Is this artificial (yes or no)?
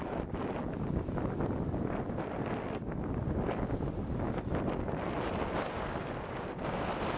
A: no